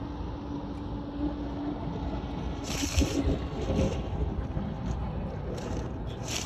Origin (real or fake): real